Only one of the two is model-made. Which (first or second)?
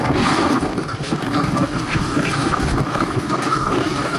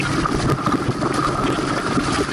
first